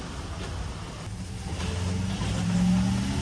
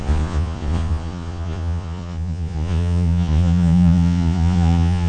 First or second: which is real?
first